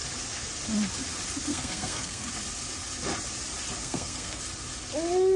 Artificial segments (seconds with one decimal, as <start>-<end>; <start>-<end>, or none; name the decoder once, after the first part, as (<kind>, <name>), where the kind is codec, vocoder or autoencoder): 1.5-2.3 (codec, SNAC); 3.8-4.4

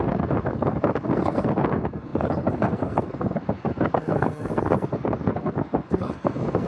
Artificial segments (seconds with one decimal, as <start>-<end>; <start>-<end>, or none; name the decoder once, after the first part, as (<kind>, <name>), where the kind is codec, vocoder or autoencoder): 0.0-6.7 (codec, SNAC)

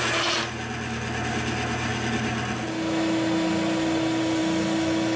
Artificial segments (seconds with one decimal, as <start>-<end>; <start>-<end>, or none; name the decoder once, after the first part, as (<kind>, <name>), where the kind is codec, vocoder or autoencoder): none